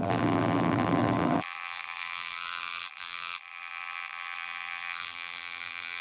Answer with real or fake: fake